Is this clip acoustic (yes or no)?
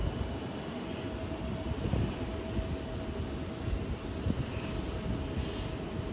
yes